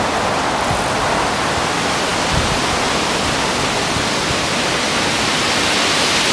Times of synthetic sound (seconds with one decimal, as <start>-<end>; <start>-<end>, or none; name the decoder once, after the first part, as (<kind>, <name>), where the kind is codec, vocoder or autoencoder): none